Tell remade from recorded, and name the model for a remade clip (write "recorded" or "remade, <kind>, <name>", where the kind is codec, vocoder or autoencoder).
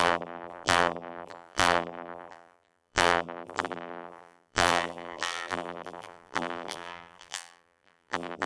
remade, vocoder, BigVGAN v2